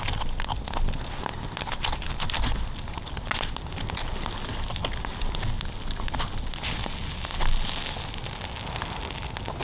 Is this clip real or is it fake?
real